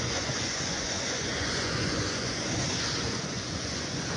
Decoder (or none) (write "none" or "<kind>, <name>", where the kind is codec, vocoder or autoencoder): vocoder, Vocos